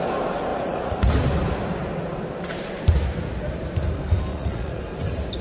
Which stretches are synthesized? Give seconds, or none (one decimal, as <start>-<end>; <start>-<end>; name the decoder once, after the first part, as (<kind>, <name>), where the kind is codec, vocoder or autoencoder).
0.5-1.1 (vocoder, Vocos); 4.3-4.8